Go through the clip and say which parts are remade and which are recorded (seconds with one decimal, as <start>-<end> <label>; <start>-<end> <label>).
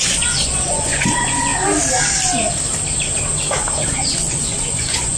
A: 0.0-1.5 remade; 1.5-3.8 recorded; 3.8-5.2 remade